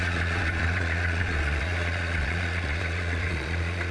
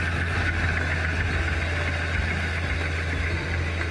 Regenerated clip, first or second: first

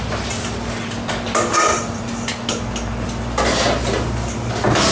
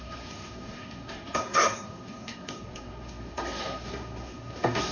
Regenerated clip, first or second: second